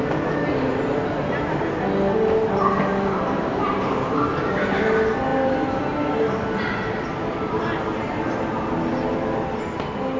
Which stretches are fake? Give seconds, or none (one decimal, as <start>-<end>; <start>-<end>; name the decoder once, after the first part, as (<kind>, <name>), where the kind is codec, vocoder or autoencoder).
0.9-1.6 (vocoder, BigVGAN v2); 2.9-4.8; 5.3-5.8